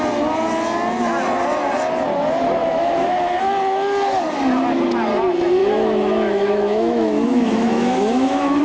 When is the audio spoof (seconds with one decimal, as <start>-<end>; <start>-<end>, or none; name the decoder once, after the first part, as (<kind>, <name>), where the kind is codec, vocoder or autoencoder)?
2.6-3.4 (autoencoder, DAC-VAE); 5.6-8.6